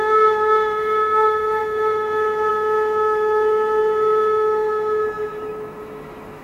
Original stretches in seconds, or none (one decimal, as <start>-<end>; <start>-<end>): none